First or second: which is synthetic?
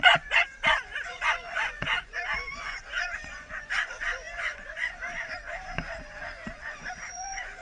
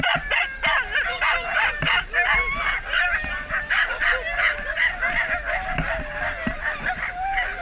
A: first